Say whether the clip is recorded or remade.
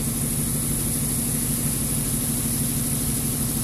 recorded